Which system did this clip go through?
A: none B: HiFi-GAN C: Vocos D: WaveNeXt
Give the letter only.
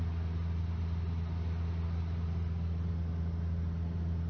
A